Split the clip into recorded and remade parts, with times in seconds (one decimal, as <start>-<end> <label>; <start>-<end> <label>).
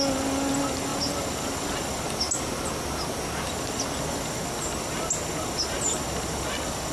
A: 0.0-6.9 recorded